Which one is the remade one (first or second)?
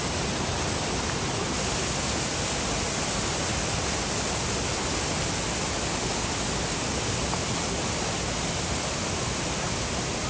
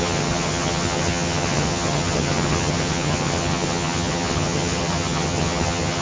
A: second